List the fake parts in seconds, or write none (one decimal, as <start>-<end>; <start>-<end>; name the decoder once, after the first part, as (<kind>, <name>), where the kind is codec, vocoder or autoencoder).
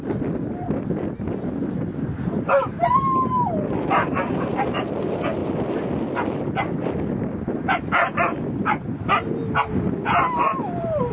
none